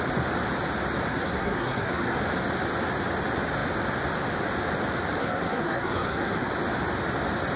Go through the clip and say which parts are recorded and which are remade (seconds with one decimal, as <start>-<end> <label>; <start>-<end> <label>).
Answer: 0.0-1.1 recorded; 1.1-2.2 remade; 2.2-5.2 recorded; 5.2-6.5 remade; 6.5-7.6 recorded